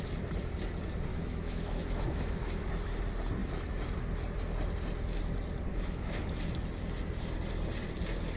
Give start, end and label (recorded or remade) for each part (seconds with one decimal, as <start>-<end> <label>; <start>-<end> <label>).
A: 0.0-1.1 recorded; 1.1-2.6 remade; 2.6-5.7 recorded; 5.7-6.2 remade; 6.2-8.4 recorded